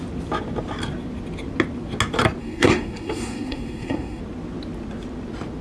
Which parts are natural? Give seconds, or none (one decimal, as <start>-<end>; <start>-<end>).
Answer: 0.0-2.4; 4.2-5.6